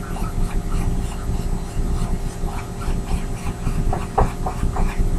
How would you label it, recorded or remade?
recorded